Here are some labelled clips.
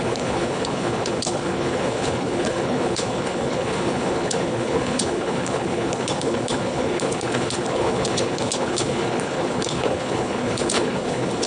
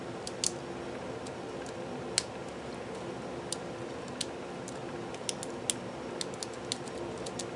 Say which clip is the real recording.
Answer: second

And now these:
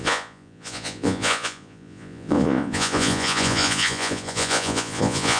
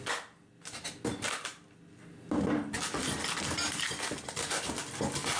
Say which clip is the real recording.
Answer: second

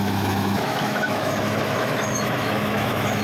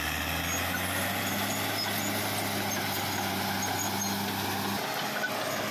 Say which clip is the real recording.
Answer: second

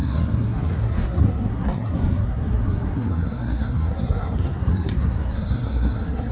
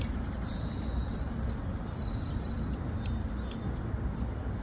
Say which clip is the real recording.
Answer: second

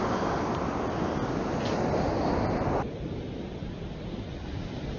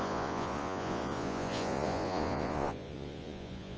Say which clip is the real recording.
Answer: first